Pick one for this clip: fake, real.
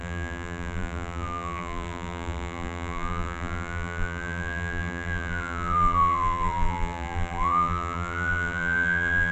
fake